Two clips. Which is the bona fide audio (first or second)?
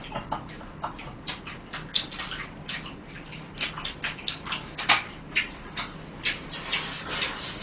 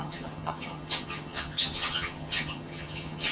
first